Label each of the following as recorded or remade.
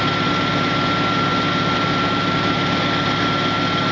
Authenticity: recorded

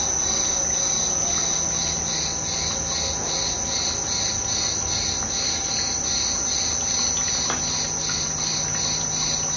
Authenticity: recorded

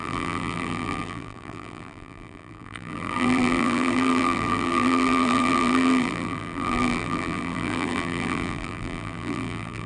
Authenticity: remade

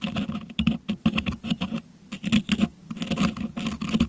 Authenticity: recorded